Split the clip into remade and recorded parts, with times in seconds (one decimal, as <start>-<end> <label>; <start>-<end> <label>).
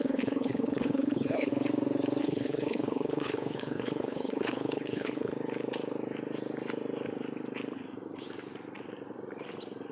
0.0-1.5 remade; 1.5-2.2 recorded; 2.2-5.3 remade; 5.3-9.9 recorded